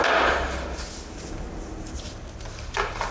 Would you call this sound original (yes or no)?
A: yes